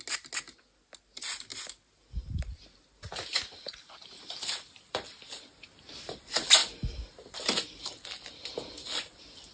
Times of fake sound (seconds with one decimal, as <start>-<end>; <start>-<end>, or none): 1.5-5.2